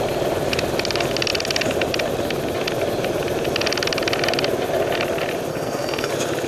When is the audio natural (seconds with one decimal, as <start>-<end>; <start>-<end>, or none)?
0.0-5.5; 6.1-6.5